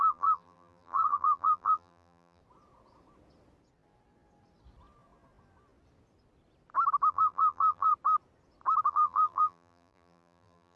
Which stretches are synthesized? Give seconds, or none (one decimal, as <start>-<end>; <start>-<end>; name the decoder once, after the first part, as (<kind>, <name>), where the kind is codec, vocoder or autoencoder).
0.0-2.4 (vocoder, BigVGAN v2); 7.1-7.9; 8.9-10.8